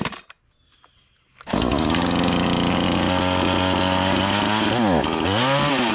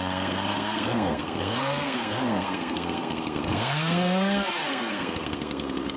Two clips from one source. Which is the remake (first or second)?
second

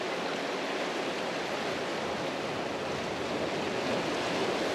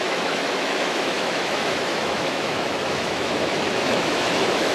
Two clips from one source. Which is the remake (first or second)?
second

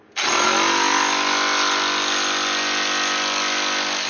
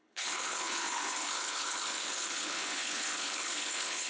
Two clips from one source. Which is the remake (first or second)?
second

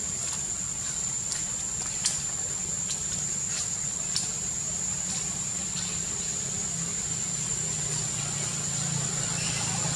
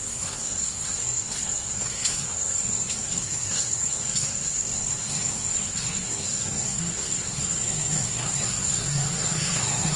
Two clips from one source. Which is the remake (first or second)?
second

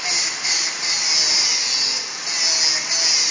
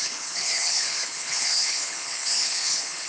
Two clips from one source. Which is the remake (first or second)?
second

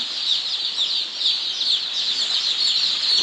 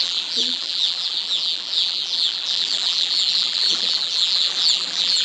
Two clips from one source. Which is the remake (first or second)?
second